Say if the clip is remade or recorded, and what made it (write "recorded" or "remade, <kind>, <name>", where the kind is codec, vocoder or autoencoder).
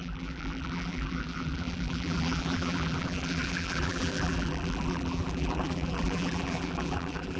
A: remade, vocoder, BigVGAN v2